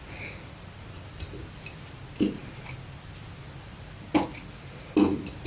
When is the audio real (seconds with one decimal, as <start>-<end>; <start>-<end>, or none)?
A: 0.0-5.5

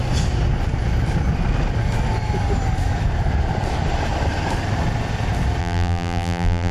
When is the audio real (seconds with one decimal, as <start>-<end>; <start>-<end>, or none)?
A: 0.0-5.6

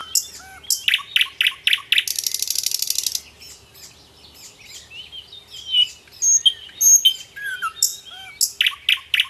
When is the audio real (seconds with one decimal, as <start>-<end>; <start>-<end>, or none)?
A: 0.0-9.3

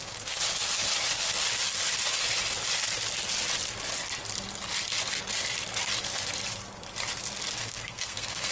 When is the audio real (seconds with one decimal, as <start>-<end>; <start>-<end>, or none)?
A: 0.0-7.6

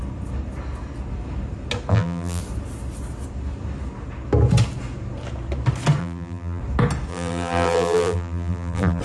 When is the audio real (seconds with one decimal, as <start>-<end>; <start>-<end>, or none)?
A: 0.0-1.9; 2.4-6.0; 6.6-7.1

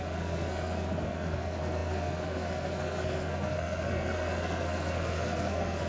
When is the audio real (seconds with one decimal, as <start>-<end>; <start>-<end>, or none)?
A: none

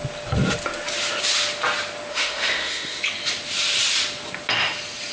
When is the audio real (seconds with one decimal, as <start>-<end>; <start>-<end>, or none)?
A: 0.0-2.1; 3.0-5.1

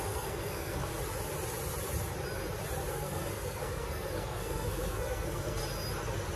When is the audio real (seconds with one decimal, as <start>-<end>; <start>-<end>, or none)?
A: 0.9-2.9; 5.6-6.4